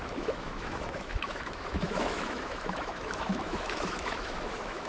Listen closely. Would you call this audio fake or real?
fake